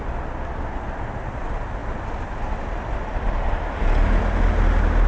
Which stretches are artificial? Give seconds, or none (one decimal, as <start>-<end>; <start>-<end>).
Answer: none